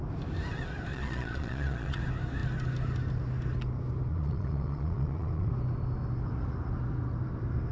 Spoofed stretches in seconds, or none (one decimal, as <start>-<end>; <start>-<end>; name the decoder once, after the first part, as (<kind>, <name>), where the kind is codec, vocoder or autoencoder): 0.9-2.0 (vocoder, Vocos); 4.1-5.5

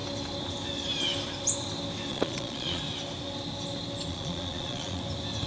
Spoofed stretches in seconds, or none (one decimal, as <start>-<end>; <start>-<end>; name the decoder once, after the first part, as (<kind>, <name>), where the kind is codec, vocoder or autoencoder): 2.1-2.8 (vocoder, Vocos); 4.1-5.0

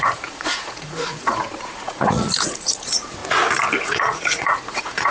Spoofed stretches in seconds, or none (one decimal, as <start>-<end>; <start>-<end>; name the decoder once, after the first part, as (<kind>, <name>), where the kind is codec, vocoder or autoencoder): 0.0-3.2 (vocoder, Vocos); 3.8-5.1

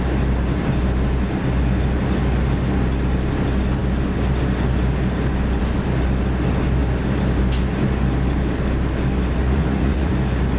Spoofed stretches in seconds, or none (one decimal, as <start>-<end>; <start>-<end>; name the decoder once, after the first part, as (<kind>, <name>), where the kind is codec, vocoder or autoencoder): 9.4-10.1 (vocoder, Vocos)

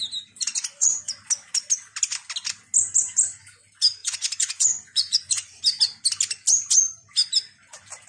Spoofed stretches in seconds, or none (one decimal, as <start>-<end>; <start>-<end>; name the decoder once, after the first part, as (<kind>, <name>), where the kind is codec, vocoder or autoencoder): 0.5-1.1 (vocoder, Vocos); 4.0-5.6

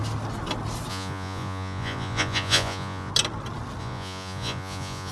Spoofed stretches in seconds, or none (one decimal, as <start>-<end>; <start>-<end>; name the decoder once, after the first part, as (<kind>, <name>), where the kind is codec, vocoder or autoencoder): 0.9-3.1 (vocoder, Vocos); 3.8-5.1